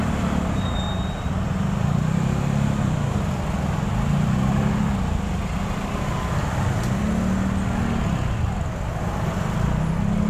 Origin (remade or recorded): recorded